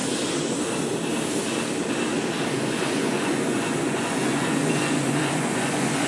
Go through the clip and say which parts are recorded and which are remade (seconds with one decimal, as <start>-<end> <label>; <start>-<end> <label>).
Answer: 0.0-2.5 recorded; 2.5-6.1 remade